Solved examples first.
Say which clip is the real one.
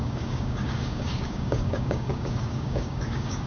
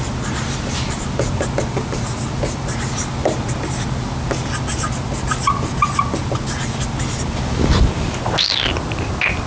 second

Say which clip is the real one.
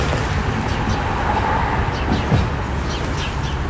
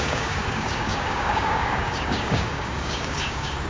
first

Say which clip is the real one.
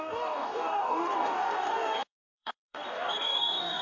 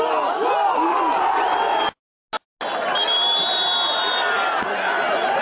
second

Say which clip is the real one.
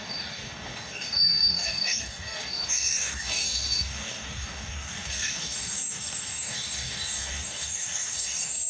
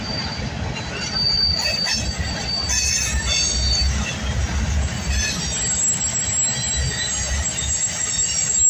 second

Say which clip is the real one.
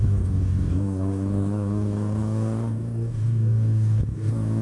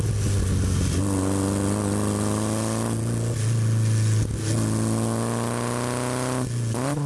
second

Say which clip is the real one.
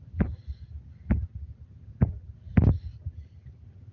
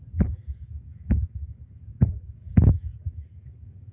first